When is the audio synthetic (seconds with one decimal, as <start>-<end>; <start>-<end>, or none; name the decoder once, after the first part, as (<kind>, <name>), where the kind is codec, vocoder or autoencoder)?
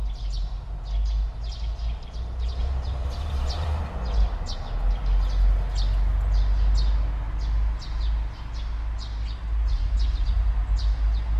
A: 2.6-3.8 (vocoder, BigVGAN v2)